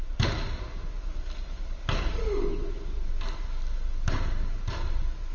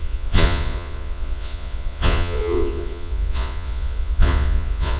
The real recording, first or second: first